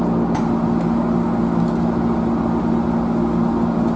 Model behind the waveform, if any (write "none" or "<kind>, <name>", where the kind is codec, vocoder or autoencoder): none